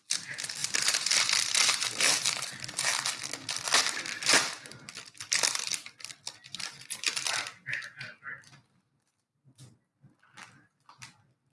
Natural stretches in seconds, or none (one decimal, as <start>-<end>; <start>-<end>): 0.0-11.5